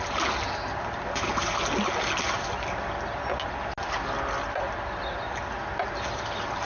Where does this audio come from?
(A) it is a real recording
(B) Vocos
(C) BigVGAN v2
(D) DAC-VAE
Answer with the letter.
A